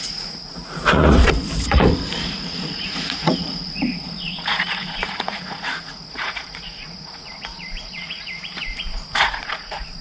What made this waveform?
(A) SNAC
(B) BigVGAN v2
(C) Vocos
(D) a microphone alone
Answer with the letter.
C